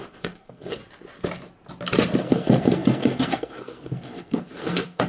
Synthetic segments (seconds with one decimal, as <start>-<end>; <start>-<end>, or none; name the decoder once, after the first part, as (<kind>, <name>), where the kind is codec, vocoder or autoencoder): 0.0-0.8 (codec, SNAC); 2.2-5.1